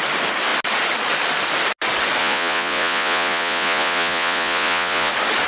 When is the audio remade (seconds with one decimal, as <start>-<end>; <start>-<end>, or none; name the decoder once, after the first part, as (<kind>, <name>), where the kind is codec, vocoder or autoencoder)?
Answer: 2.2-5.1 (vocoder, Vocos)